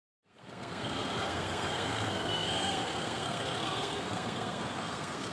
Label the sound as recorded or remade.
remade